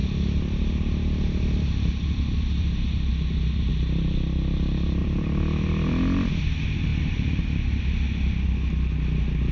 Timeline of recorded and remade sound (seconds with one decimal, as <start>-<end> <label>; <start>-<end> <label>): 0.0-3.7 remade; 3.7-5.0 recorded; 5.0-6.4 remade; 6.4-6.9 recorded; 6.9-7.6 remade; 7.6-9.5 recorded